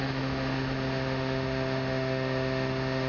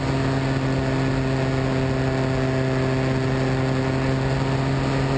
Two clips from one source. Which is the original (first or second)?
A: second